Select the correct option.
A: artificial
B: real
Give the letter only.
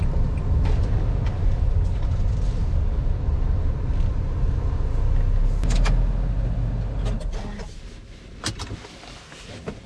B